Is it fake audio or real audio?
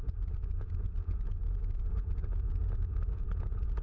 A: fake